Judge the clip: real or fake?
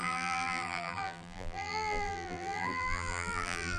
fake